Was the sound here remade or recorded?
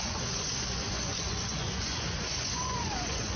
remade